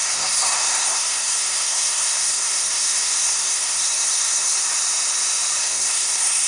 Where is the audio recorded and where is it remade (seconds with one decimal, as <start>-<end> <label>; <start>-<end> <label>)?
0.0-4.6 remade; 4.6-5.6 recorded; 5.6-6.5 remade